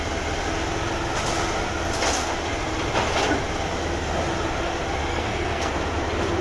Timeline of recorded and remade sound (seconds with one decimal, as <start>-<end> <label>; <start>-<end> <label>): 0.0-5.1 recorded; 5.1-5.7 remade; 5.7-6.4 recorded